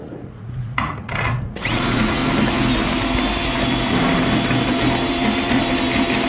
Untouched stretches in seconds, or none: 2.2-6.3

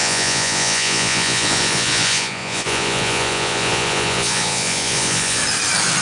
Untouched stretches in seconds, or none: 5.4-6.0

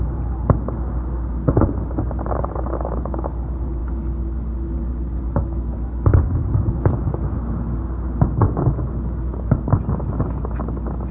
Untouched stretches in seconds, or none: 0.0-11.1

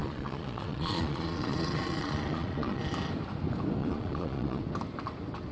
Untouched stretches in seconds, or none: 2.8-3.8; 4.6-5.5

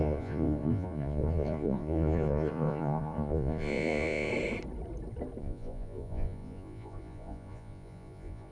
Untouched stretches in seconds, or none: 4.3-5.4

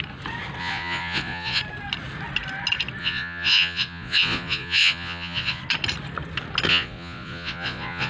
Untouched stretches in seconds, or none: 0.0-0.6; 1.6-3.0; 5.6-6.7

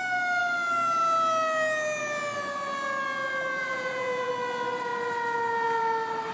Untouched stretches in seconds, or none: 0.0-3.6; 4.3-6.3

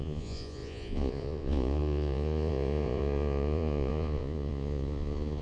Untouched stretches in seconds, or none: none